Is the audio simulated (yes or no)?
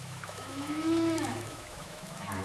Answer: yes